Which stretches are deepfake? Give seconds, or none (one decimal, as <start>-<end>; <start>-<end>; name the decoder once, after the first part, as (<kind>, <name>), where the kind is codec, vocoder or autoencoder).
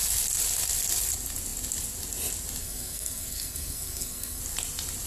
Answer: 2.6-4.4 (codec, SNAC)